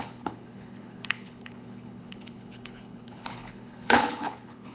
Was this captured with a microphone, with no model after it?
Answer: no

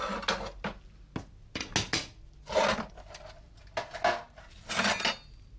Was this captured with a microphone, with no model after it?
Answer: yes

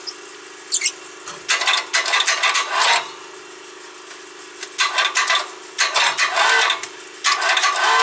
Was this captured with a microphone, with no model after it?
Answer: yes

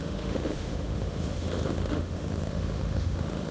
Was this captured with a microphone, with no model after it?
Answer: no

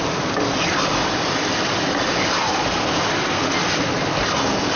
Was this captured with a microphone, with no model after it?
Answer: yes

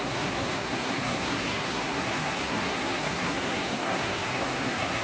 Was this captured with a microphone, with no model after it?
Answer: no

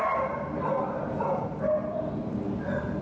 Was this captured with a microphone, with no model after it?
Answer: yes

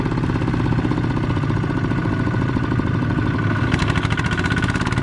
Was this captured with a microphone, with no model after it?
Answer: yes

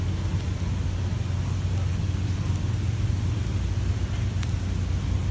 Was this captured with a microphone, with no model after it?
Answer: yes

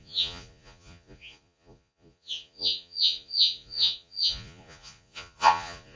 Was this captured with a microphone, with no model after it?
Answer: no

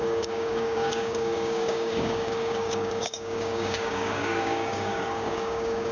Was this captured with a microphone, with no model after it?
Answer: no